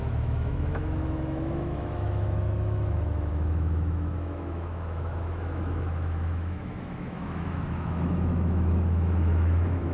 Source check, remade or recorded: remade